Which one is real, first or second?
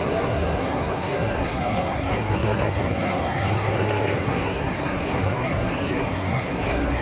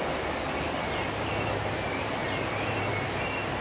second